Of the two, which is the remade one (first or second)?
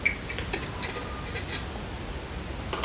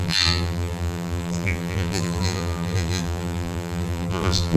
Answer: second